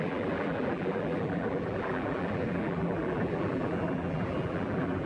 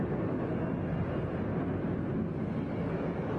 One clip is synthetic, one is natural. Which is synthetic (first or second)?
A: first